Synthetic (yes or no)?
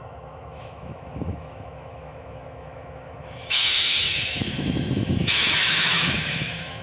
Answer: yes